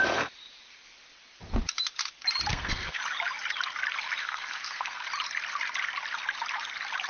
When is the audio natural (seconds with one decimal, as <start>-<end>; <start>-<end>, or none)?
0.0-2.5; 3.0-4.2; 5.0-7.1